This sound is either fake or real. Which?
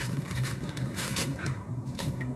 fake